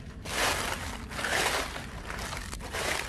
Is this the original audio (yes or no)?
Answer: yes